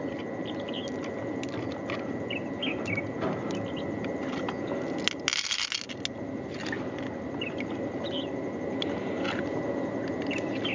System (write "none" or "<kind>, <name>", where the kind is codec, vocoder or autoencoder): none